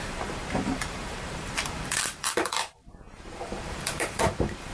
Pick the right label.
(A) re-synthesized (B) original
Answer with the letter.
A